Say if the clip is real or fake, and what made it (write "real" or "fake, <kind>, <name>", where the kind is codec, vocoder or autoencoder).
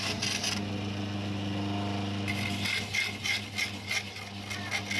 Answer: real